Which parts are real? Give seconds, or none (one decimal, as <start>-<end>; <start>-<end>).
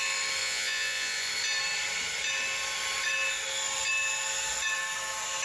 0.0-0.4; 1.3-5.4